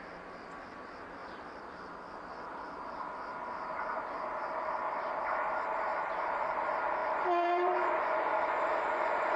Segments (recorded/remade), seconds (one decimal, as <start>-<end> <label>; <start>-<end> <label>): 0.0-7.0 recorded; 7.0-9.4 remade